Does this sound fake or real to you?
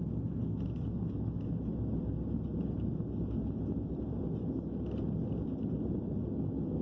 real